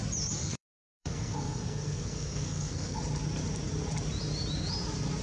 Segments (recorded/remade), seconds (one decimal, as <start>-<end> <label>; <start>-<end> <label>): 0.0-0.4 recorded; 0.4-3.0 remade; 3.0-5.2 recorded